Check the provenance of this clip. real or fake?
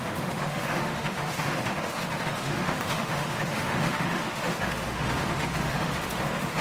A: fake